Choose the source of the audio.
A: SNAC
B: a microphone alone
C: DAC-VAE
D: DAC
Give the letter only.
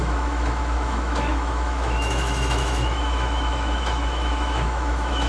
C